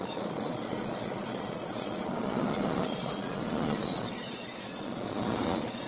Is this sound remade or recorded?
remade